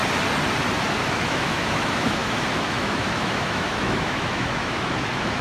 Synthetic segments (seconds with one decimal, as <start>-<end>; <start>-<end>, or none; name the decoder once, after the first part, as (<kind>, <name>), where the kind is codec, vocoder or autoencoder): 1.1-5.4 (autoencoder, DAC-VAE)